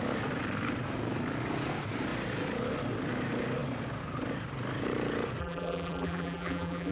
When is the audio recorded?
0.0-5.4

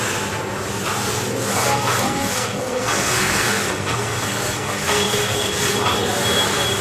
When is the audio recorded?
0.0-1.5; 5.6-6.8

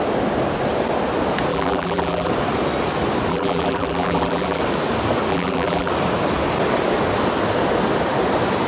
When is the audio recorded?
0.0-1.5; 2.3-3.3; 4.6-5.3; 5.9-8.7